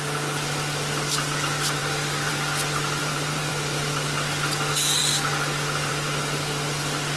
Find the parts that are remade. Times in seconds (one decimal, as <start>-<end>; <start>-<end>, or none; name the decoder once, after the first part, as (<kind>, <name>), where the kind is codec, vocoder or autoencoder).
3.0-3.5 (vocoder, BigVGAN v2)